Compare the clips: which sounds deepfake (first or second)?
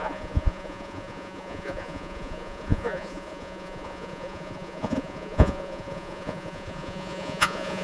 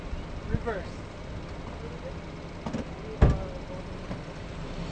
first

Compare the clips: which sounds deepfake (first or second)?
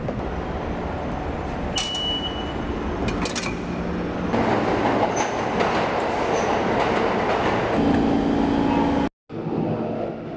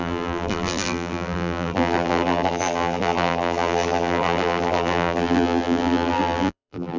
second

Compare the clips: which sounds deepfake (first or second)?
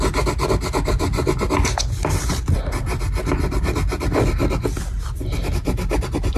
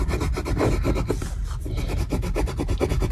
second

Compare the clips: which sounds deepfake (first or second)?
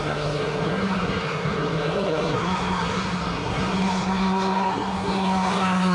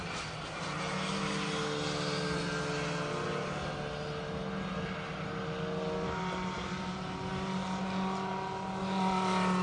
first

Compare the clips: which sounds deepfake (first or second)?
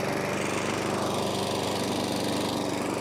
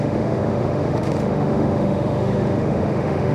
second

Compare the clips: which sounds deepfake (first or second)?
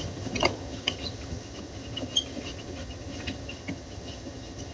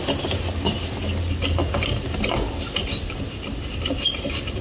first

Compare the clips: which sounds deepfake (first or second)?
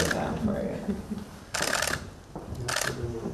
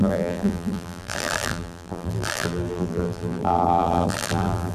second